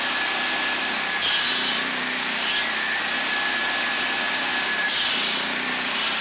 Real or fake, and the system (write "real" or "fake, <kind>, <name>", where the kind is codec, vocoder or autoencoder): real